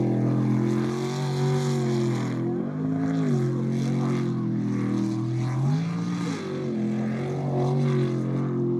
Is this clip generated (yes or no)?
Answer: no